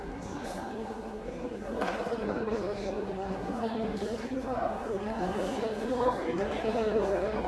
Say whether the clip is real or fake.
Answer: fake